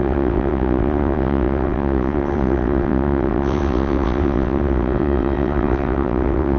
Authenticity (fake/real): fake